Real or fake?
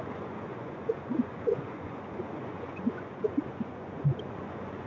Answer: fake